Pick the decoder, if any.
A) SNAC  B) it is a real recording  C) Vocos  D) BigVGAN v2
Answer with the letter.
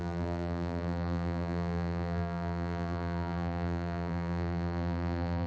D